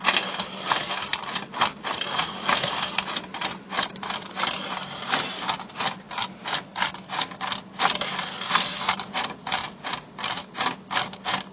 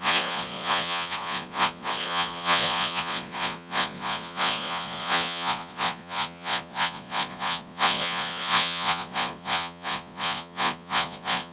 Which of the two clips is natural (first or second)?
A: first